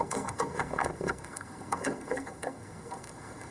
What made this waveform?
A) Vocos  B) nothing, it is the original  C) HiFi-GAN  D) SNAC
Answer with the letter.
D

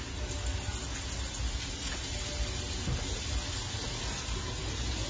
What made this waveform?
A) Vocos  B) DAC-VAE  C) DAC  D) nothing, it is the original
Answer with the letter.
D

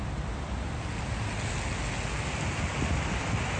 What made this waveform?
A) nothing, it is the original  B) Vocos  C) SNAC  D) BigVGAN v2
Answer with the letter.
A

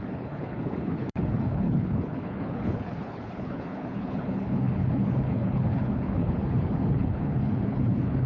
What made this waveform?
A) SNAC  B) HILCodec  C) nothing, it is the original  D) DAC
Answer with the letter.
B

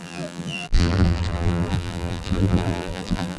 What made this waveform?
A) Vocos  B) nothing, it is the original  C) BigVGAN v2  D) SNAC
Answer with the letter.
C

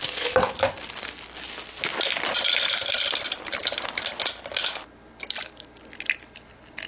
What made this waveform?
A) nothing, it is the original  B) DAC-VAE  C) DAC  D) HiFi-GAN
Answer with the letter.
A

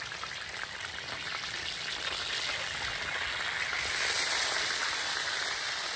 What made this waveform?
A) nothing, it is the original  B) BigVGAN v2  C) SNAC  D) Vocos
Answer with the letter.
A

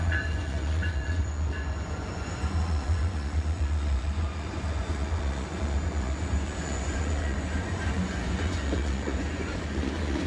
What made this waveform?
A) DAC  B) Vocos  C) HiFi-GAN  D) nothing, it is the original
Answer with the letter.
B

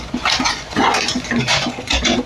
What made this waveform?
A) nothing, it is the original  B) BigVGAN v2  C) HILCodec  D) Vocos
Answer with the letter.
D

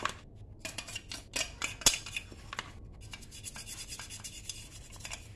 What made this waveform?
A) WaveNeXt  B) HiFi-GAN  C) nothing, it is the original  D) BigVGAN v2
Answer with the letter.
C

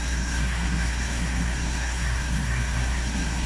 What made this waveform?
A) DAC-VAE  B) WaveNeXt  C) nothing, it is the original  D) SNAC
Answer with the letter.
D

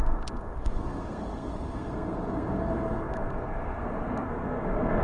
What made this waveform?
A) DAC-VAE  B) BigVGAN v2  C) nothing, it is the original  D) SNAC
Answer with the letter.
D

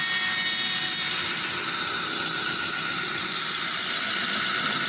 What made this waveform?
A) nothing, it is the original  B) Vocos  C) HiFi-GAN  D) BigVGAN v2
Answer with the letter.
A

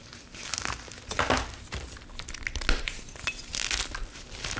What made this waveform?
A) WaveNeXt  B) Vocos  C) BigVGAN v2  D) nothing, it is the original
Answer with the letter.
D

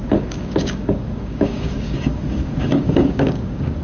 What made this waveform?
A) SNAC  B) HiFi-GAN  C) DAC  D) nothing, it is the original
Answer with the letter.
C